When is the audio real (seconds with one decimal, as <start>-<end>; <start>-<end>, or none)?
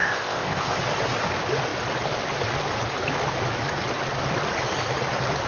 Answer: 0.8-5.5